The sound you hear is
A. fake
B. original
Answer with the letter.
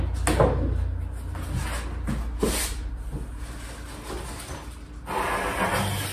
B